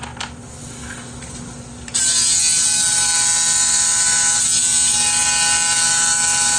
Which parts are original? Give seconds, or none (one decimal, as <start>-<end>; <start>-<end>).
0.0-6.6